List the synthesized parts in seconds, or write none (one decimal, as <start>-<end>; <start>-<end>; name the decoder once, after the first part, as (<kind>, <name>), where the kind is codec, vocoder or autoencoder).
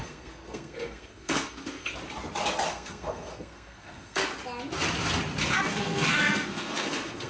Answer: 0.0-1.9 (codec, SNAC); 2.7-4.3; 5.6-7.3